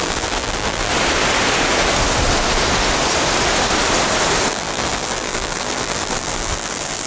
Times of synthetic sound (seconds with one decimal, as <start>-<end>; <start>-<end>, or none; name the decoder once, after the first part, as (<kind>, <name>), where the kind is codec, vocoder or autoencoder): 0.0-0.9 (vocoder, BigVGAN v2); 4.5-7.1